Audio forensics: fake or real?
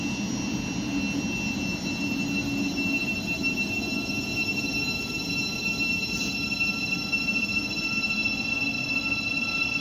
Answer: real